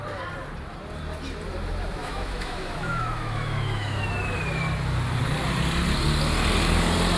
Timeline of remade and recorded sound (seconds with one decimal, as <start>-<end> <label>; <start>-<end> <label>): 0.0-2.0 recorded; 2.0-4.0 remade; 4.0-7.2 recorded